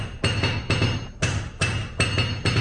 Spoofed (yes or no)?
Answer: no